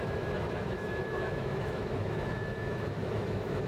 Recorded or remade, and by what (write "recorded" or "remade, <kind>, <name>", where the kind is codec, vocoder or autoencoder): remade, autoencoder, DAC-VAE